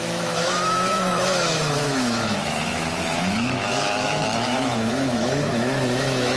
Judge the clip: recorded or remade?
remade